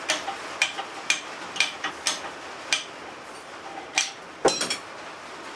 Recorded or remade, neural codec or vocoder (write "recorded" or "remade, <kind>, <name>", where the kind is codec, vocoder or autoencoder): recorded